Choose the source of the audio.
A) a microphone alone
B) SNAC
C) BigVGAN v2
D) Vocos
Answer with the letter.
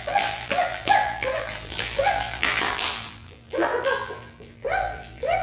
C